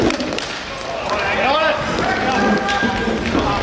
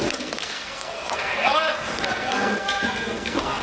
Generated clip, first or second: second